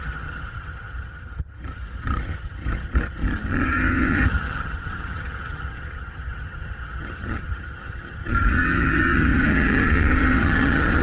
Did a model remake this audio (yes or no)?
yes